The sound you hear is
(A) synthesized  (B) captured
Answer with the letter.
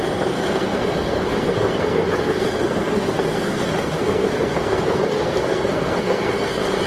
A